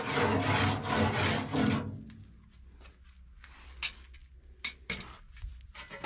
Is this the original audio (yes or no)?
yes